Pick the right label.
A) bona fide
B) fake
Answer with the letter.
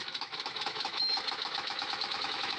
B